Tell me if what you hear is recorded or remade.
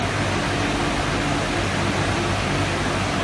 recorded